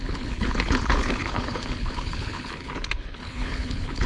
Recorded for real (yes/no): no